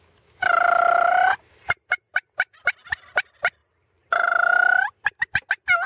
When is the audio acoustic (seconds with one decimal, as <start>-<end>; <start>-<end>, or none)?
0.0-1.1; 2.0-3.6; 4.8-5.9